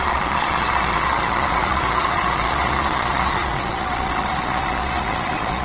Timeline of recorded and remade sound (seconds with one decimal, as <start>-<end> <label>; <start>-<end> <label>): 0.0-5.6 remade